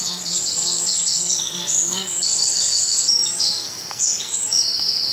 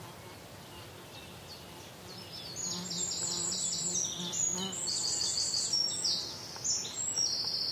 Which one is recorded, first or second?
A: second